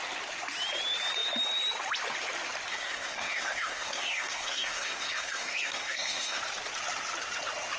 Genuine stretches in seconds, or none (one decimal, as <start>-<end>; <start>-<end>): 0.0-2.7; 6.4-7.8